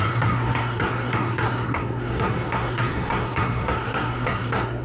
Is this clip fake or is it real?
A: fake